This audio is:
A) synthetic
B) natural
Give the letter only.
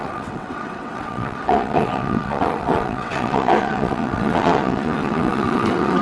A